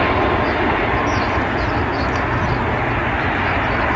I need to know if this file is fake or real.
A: real